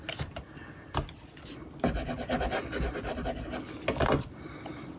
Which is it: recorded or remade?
recorded